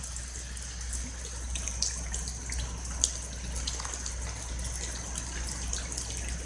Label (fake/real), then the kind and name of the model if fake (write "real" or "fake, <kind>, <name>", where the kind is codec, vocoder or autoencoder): real